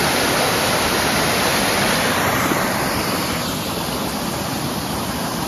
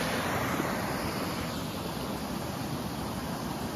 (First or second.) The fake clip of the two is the first